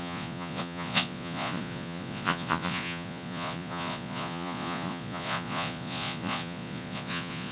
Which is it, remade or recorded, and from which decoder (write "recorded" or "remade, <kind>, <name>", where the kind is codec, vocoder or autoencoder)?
remade, vocoder, Vocos